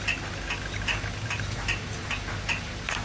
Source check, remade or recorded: recorded